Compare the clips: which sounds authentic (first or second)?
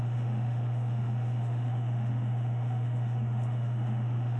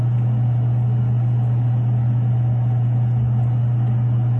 second